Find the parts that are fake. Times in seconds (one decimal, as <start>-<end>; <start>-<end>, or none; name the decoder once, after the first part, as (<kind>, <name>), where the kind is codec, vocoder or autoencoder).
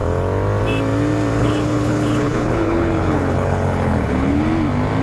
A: 1.4-4.4 (codec, HILCodec)